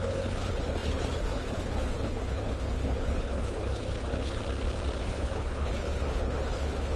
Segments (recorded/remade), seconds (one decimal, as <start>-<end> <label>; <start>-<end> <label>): 0.0-4.4 remade; 4.4-5.0 recorded; 5.0-7.0 remade